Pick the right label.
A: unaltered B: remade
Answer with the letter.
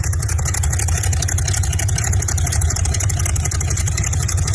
B